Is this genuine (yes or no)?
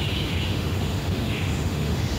no